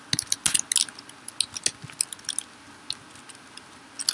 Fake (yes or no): no